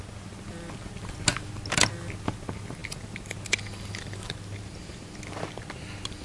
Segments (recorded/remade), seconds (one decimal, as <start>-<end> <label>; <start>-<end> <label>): 0.0-6.2 recorded